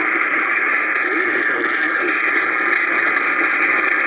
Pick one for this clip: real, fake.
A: real